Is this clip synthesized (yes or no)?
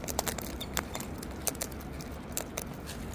no